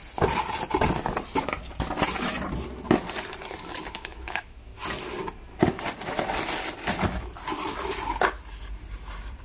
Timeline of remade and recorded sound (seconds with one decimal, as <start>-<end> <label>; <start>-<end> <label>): 0.0-3.9 recorded; 3.9-4.7 remade; 4.7-9.4 recorded